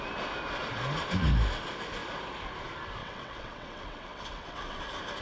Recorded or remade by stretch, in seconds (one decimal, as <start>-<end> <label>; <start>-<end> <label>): 0.0-3.0 recorded; 3.0-4.8 remade; 4.8-5.2 recorded